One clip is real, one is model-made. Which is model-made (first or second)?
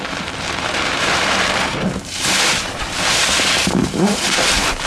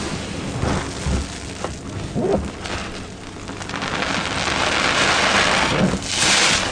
first